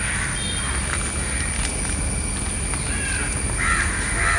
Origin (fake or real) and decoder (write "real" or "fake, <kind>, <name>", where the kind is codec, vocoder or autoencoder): real